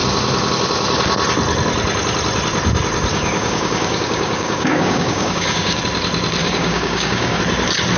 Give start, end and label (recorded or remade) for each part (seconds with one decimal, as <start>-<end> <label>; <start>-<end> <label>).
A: 0.0-3.1 recorded; 3.1-5.8 remade; 5.8-6.4 recorded; 6.4-7.4 remade; 7.4-8.0 recorded